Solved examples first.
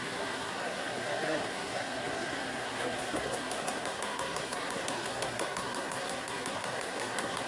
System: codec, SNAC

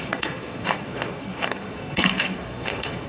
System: codec, SNAC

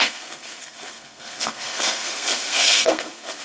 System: codec, SNAC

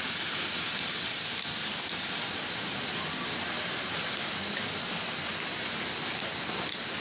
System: none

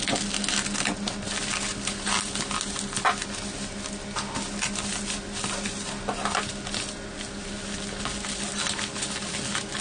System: none